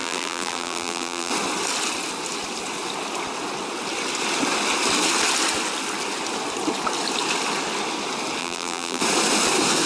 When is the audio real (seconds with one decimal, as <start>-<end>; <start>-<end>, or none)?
1.3-8.4; 9.0-9.9